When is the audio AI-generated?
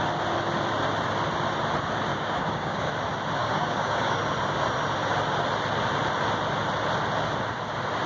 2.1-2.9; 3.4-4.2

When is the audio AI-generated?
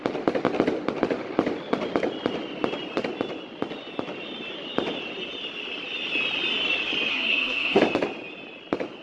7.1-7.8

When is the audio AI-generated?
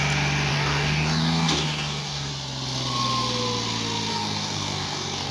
0.5-2.3; 4.1-5.3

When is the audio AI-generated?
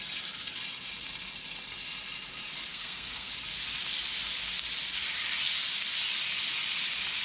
2.7-3.3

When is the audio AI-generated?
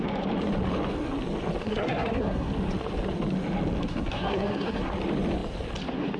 1.6-2.5; 3.8-4.9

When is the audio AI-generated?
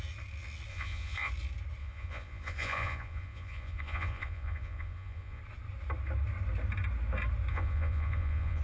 0.7-1.3; 1.8-5.4; 7.5-8.6